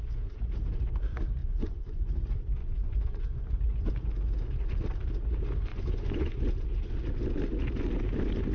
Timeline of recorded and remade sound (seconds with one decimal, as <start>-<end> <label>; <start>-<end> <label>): 0.0-1.4 recorded; 1.4-2.2 remade; 2.2-2.6 recorded; 2.6-3.9 remade; 3.9-5.7 recorded; 5.7-6.5 remade; 6.5-8.5 recorded